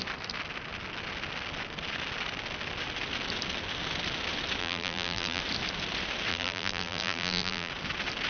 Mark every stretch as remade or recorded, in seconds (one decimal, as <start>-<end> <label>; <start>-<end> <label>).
0.0-4.6 recorded; 4.6-5.4 remade; 5.4-6.3 recorded; 6.3-7.7 remade; 7.7-8.3 recorded